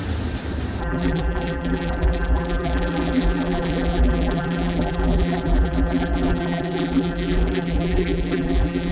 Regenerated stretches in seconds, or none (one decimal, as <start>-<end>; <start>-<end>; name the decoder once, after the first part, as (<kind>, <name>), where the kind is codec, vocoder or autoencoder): 0.8-8.9 (vocoder, BigVGAN v2)

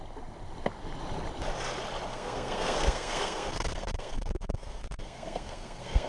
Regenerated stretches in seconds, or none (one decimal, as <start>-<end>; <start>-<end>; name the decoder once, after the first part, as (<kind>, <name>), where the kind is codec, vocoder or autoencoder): 2.1-6.1 (codec, SNAC)

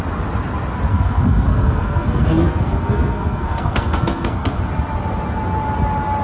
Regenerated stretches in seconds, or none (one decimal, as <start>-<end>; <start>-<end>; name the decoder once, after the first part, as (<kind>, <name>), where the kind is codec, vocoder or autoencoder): 0.9-4.6 (codec, SNAC)

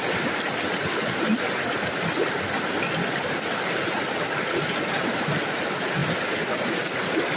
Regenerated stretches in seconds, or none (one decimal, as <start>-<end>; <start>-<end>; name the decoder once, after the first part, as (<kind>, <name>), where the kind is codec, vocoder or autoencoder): none

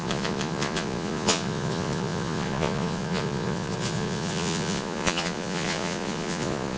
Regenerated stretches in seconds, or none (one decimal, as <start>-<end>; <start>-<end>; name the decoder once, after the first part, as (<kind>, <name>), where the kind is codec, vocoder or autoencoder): 0.0-6.8 (vocoder, Vocos)

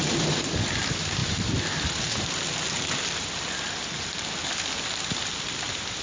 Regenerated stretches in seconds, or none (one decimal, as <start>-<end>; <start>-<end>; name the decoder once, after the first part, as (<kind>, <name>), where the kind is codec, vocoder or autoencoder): none